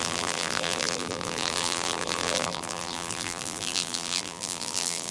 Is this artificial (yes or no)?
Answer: yes